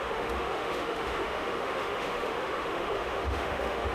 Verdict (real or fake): fake